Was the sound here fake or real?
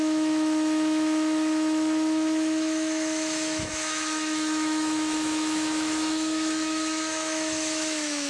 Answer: fake